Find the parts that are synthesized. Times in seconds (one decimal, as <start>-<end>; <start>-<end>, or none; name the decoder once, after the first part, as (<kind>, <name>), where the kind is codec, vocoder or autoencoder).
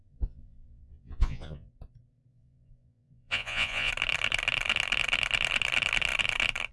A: 0.0-1.7 (vocoder, Vocos); 2.3-3.9